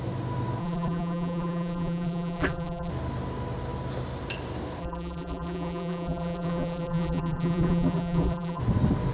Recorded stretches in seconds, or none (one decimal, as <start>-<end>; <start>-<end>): 0.0-0.6; 2.9-4.8; 8.6-9.1